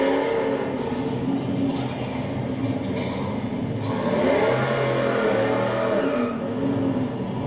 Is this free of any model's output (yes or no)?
yes